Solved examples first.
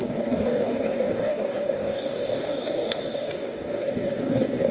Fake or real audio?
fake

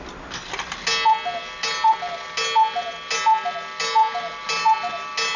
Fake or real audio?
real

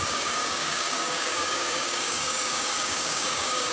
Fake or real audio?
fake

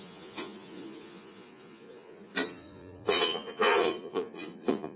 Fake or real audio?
fake